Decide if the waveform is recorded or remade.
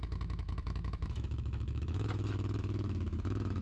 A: remade